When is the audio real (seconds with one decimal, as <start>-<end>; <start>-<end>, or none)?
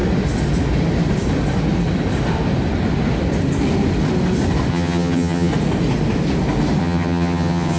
0.0-4.7; 5.5-6.8